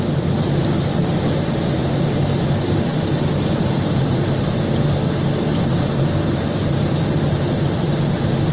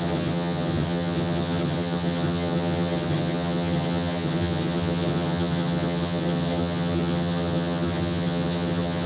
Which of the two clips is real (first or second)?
first